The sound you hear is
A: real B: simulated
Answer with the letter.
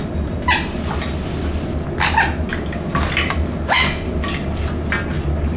A